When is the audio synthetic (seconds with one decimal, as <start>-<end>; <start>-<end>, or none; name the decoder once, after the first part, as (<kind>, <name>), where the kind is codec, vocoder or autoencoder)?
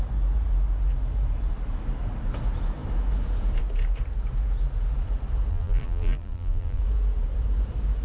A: 5.5-6.8 (vocoder, BigVGAN v2)